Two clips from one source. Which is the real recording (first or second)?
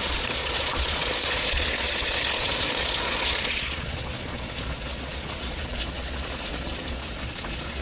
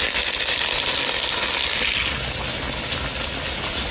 second